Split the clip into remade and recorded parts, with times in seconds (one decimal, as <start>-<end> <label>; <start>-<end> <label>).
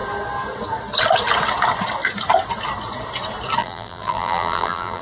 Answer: 0.0-3.6 recorded; 3.6-5.0 remade